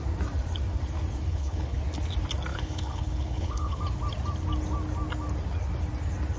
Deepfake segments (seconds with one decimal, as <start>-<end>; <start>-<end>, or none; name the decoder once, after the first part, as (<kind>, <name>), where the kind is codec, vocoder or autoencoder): 1.3-1.8 (codec, HILCodec); 2.5-3.8